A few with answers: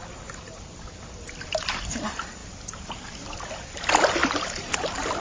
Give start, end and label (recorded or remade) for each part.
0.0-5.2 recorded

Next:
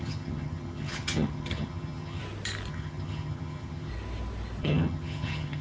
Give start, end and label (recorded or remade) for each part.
0.0-2.2 remade; 2.2-2.7 recorded; 2.7-3.9 remade; 3.9-4.6 recorded; 4.6-5.6 remade

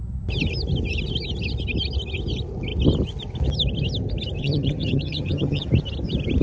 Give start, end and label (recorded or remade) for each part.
0.0-4.4 recorded; 4.4-5.7 remade; 5.7-6.4 recorded

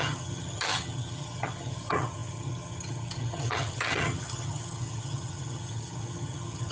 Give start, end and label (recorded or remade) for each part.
0.0-6.7 remade

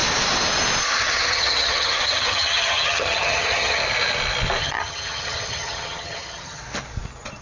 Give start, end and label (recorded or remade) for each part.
0.0-1.0 recorded; 1.0-3.8 remade; 3.8-4.6 recorded; 4.6-6.6 remade; 6.6-7.4 recorded

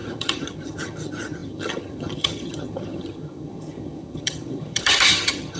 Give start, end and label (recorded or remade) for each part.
0.0-5.6 remade